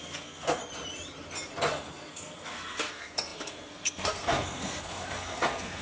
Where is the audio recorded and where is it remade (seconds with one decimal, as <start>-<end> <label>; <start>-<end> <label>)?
0.0-0.6 remade; 0.6-1.7 recorded; 1.7-5.8 remade